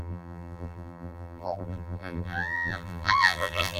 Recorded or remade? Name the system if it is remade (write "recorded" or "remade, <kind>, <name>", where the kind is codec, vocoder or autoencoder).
remade, vocoder, BigVGAN v2